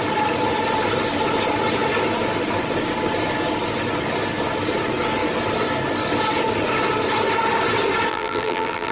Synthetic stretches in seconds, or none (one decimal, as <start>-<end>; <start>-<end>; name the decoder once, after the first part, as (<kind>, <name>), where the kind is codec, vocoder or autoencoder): 8.1-8.9 (vocoder, BigVGAN v2)